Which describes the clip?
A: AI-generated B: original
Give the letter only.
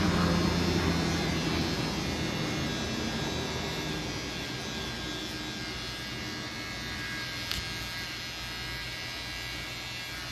B